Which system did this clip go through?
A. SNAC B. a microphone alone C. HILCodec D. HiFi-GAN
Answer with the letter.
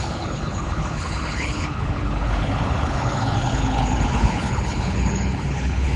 C